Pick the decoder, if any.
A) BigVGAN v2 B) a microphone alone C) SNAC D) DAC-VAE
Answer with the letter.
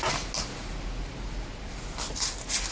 B